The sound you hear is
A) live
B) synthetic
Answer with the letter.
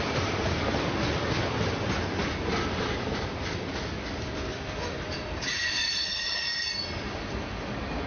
A